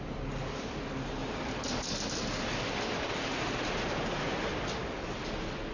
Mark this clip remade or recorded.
recorded